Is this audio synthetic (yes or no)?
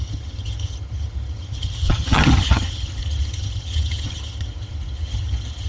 yes